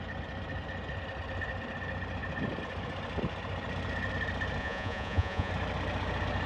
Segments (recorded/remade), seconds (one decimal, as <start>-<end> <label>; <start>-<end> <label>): 0.0-4.6 recorded; 4.6-5.5 remade; 5.5-6.5 recorded